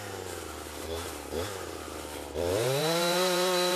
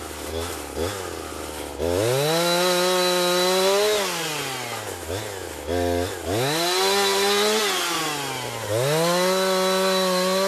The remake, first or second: first